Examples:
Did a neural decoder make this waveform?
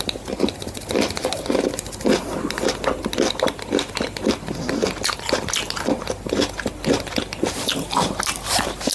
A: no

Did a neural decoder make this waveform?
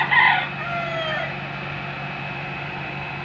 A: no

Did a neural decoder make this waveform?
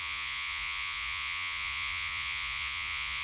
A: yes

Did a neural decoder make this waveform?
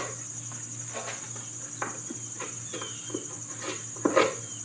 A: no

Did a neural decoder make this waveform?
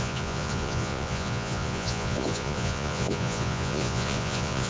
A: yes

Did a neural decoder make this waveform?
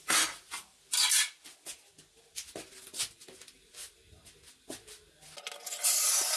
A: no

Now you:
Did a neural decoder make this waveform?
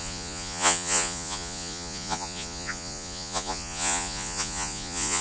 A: yes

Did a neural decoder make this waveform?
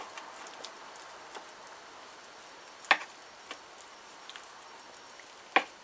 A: no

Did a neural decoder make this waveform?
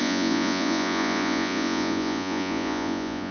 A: yes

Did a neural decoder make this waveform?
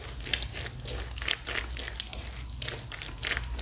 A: no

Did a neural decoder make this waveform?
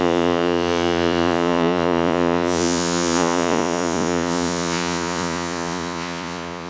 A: yes